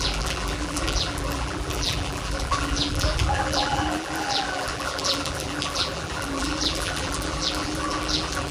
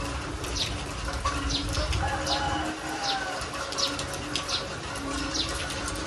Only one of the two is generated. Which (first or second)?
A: first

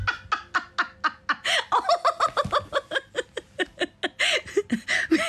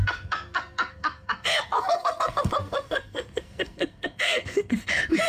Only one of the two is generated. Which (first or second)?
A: second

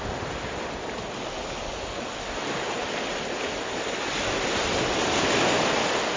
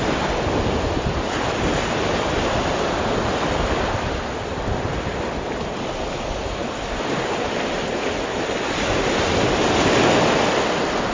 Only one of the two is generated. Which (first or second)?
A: second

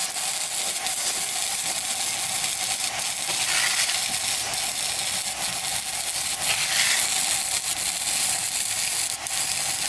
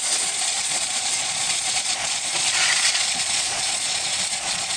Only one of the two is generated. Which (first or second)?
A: second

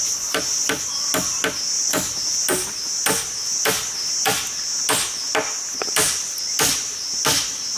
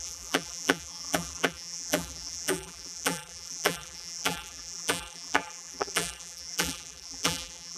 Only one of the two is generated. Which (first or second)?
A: second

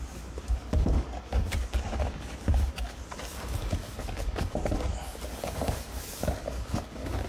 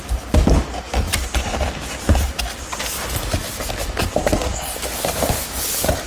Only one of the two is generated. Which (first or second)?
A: first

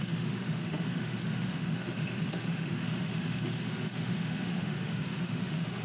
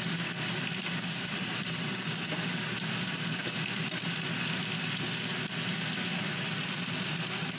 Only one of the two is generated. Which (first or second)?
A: first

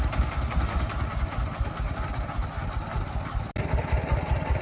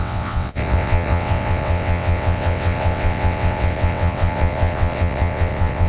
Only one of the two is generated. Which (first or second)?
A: second